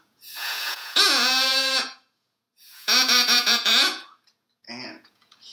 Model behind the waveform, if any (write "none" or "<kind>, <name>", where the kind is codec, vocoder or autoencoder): vocoder, Vocos